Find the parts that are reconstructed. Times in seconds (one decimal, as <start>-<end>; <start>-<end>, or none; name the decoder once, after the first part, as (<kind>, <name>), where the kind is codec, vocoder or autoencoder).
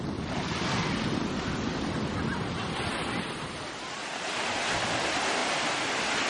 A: none